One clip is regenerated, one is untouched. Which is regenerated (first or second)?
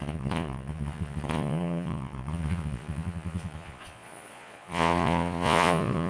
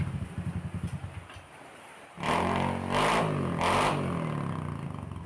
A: first